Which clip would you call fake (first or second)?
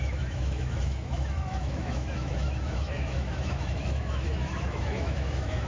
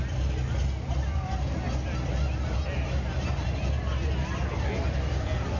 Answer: first